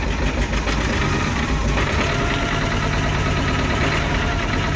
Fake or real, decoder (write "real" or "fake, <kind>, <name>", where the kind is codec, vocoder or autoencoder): real